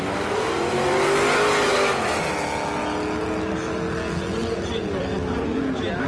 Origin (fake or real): real